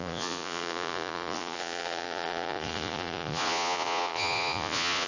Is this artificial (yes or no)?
yes